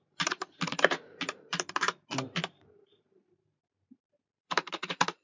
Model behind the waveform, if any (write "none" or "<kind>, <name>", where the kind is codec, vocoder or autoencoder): vocoder, BigVGAN v2